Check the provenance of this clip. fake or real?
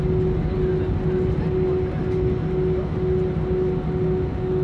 real